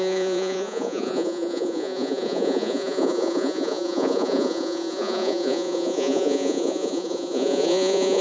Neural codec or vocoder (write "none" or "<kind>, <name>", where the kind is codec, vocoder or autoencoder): vocoder, Vocos